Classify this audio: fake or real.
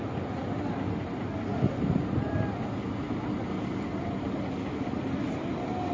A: real